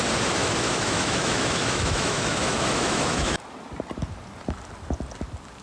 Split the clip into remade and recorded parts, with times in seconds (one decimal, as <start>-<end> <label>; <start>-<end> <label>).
0.0-0.4 recorded; 0.4-3.4 remade; 3.4-5.6 recorded